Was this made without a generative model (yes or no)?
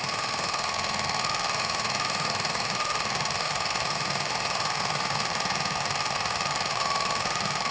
no